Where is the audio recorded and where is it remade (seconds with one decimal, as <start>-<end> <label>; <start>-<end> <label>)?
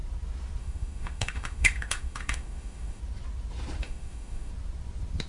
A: 0.0-0.6 recorded; 0.6-3.0 remade; 3.0-3.8 recorded; 3.8-4.5 remade; 4.5-5.3 recorded